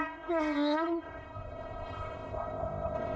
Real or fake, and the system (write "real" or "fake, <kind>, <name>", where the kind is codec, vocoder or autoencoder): fake, codec, ZipCodec